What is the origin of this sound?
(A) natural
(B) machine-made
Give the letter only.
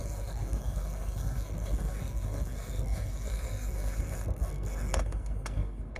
B